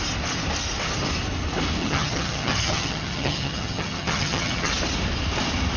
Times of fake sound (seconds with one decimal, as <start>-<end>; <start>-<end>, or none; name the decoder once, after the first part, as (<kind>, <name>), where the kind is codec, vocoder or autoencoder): 1.8-4.7 (vocoder, HiFi-GAN)